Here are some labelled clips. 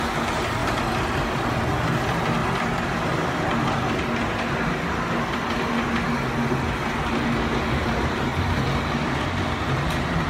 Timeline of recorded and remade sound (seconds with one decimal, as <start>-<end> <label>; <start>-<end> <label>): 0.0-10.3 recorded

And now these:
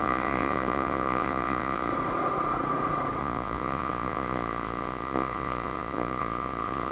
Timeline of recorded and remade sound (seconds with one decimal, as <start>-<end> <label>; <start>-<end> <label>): 0.0-1.9 remade; 1.9-3.2 recorded; 3.2-6.9 remade

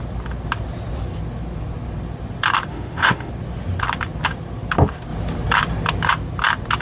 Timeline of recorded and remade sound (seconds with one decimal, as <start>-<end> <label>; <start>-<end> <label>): 0.0-2.7 recorded; 2.7-3.3 remade; 3.3-6.8 recorded